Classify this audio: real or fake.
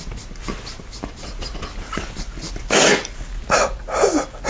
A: real